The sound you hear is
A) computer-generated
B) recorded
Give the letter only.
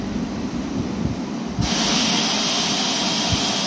B